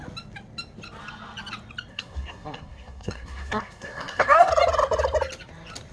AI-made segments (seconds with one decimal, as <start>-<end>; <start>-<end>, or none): 1.9-4.5